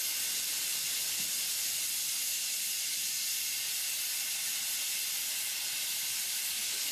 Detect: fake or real real